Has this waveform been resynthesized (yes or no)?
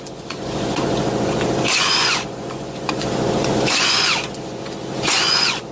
yes